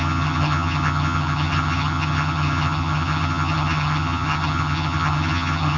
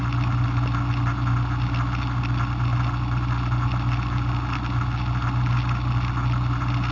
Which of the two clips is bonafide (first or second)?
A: second